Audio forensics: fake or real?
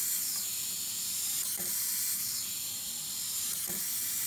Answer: real